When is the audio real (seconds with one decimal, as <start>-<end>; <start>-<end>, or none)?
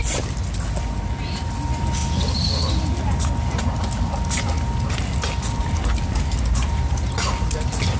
0.0-8.0